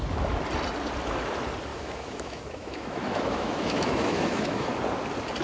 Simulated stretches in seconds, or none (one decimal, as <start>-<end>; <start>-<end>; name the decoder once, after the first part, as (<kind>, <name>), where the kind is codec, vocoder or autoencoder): 1.7-4.7 (autoencoder, DAC-VAE)